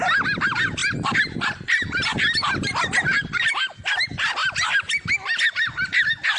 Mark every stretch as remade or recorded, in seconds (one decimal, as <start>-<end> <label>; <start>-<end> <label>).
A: 0.0-6.4 recorded